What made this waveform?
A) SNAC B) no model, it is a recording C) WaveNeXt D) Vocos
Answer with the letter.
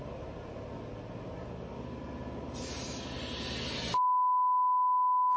B